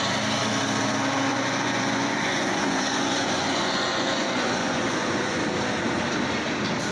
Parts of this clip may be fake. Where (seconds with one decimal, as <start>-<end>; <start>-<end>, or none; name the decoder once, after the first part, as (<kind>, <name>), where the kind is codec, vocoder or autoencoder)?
1.3-5.4 (vocoder, Vocos)